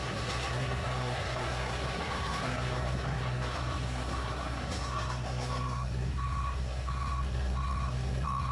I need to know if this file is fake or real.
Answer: fake